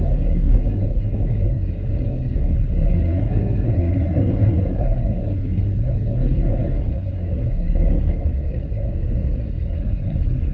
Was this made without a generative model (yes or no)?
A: no